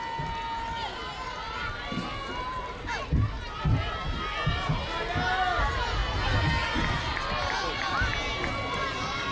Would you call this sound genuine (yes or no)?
yes